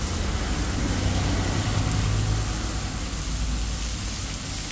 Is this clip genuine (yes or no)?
yes